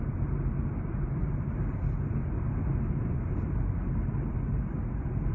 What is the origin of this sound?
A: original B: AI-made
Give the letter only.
A